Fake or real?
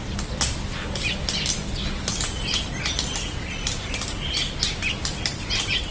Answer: real